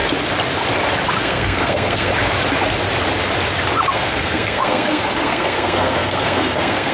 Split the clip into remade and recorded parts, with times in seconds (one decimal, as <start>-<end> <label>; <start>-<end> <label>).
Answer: 0.0-1.2 recorded; 1.2-2.1 remade; 2.1-3.9 recorded; 3.9-6.9 remade